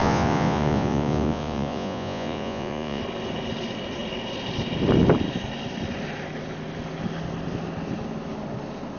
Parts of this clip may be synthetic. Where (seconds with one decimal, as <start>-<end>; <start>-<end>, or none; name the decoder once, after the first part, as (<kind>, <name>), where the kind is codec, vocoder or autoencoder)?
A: 0.0-3.0 (vocoder, Vocos)